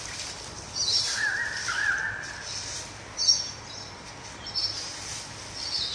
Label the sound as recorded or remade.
recorded